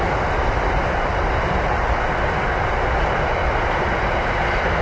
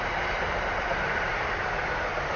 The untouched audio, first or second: first